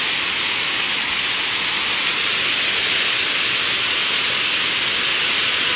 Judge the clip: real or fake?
real